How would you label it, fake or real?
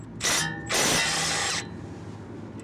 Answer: real